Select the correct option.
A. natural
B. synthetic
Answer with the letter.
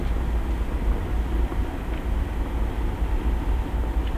A